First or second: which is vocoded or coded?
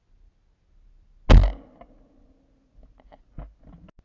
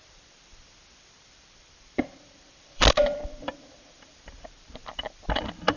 second